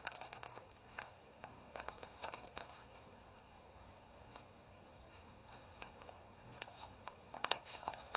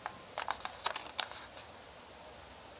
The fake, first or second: first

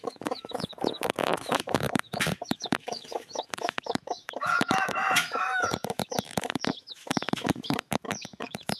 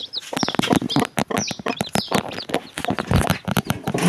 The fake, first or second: first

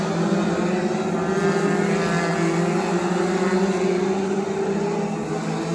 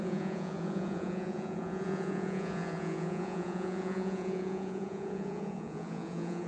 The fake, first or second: second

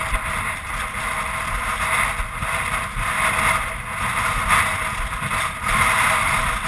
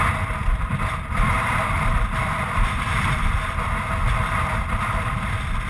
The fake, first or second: second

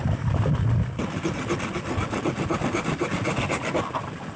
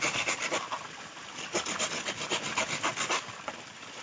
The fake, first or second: second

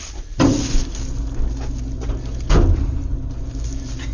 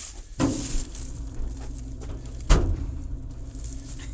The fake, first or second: second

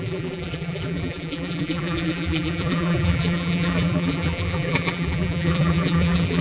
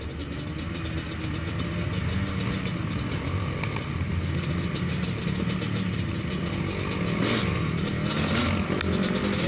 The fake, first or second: first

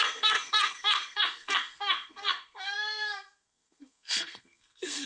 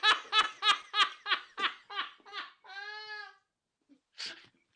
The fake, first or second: first